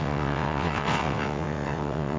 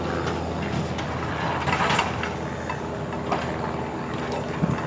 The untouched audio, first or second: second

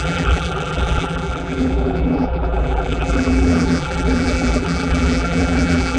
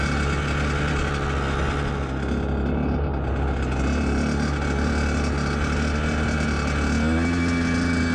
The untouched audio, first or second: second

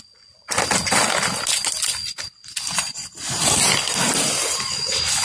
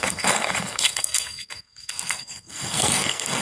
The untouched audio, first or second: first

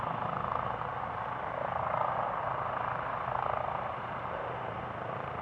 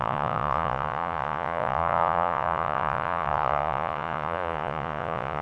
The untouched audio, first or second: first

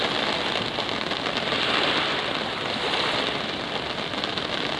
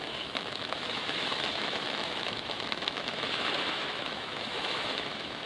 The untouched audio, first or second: first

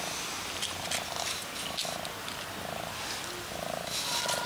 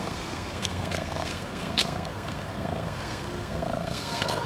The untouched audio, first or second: first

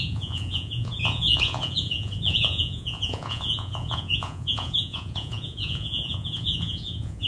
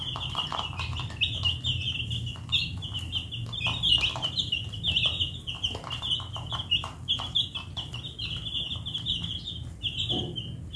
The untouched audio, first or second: second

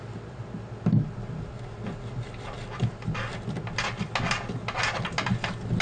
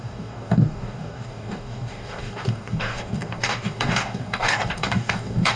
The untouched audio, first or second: first